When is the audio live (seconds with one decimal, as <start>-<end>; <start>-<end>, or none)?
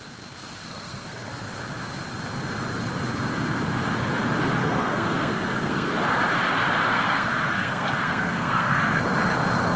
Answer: 0.0-0.6; 1.3-4.6; 5.9-6.9; 9.0-9.8